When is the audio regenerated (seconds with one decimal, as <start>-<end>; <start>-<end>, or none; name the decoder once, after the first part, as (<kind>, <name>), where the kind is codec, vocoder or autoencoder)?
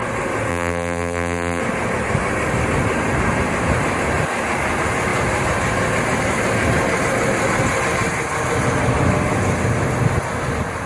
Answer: 0.5-1.6 (vocoder, BigVGAN v2)